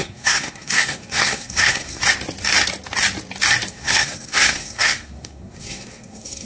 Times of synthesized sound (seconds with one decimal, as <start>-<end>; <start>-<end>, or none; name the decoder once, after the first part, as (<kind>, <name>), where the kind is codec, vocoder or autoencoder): 0.0-2.0 (codec, SNAC); 3.7-6.5